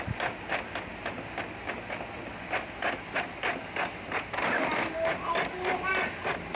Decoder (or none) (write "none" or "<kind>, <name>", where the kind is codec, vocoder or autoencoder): none